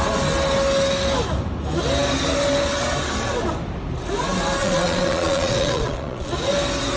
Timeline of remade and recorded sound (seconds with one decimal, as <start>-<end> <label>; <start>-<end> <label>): 0.0-4.6 recorded; 4.6-6.3 remade; 6.3-7.0 recorded